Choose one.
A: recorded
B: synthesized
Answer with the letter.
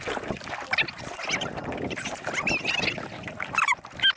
A